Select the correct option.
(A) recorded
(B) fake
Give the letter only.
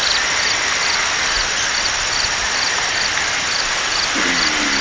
A